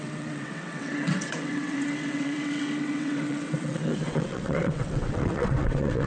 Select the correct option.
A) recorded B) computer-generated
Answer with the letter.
B